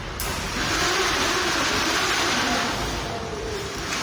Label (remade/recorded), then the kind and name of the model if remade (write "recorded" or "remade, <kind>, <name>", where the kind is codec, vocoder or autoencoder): recorded